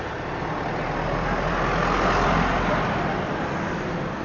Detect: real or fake real